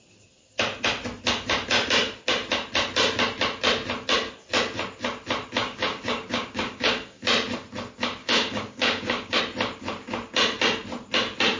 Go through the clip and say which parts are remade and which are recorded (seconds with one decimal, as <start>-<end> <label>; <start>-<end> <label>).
0.0-5.6 recorded; 5.6-7.2 remade; 7.2-8.2 recorded; 8.2-9.4 remade; 9.4-11.6 recorded